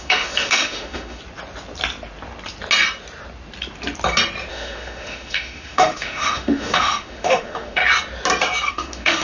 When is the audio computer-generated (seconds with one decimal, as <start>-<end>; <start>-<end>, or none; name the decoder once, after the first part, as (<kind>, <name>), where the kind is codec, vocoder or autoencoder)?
0.0-1.2 (autoencoder, DAC-VAE); 4.5-7.8; 8.7-9.2